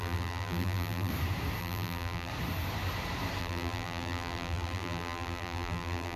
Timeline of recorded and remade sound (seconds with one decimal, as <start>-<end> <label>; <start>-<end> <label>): 0.0-1.1 remade; 1.1-1.6 recorded; 1.6-2.3 remade; 2.3-3.4 recorded; 3.4-6.2 remade